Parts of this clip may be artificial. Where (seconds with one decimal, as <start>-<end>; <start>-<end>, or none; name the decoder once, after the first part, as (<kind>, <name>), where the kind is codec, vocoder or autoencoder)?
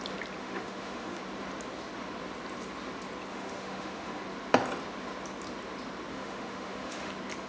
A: 0.4-1.2 (autoencoder, DAC-VAE); 3.3-4.2; 6.1-7.1